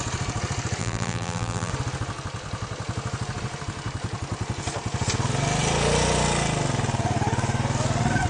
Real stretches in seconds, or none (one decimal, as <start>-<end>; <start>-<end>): 0.0-0.8; 1.7-8.3